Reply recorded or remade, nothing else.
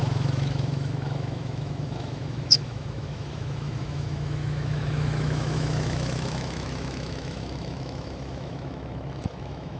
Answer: remade